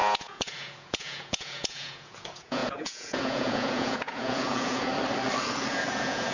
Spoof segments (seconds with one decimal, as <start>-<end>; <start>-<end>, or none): 0.0-4.9; 5.7-6.3